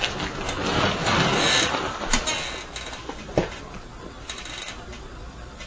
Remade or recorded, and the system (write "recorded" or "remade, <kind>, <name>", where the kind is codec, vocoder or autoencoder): recorded